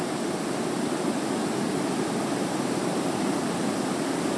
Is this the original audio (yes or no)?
yes